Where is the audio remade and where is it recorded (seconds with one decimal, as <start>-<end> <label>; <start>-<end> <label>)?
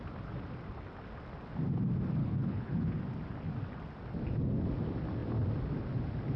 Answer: 0.0-2.2 recorded; 2.2-3.0 remade; 3.0-6.4 recorded